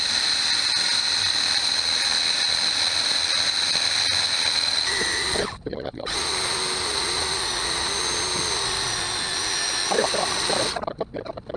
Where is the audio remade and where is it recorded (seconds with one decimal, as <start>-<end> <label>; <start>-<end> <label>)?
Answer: 0.0-5.7 recorded; 5.7-6.2 remade; 6.2-11.6 recorded